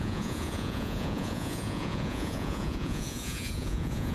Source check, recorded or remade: remade